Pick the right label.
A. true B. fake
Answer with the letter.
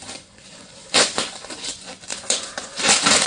B